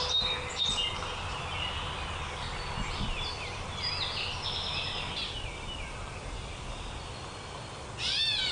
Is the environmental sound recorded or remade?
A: recorded